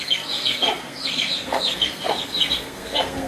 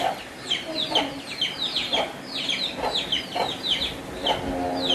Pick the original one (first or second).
second